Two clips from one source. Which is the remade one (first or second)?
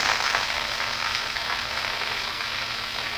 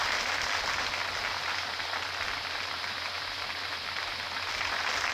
first